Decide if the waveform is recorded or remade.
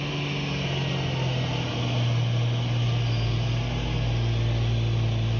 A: recorded